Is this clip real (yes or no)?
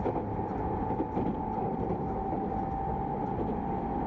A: yes